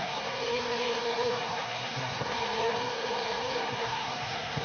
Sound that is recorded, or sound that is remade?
remade